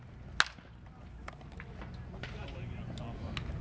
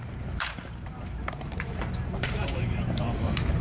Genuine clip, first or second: first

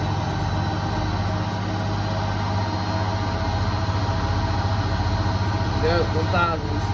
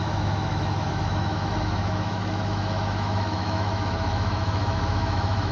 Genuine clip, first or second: first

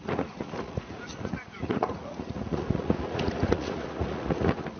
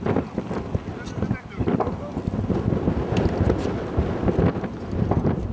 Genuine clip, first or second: second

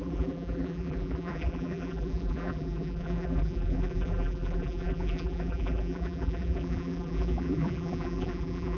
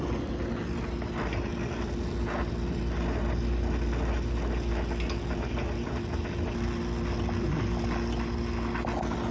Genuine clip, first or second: second